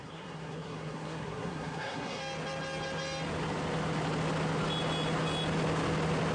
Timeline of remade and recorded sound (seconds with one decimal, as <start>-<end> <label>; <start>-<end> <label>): 0.0-2.2 remade; 2.2-6.3 recorded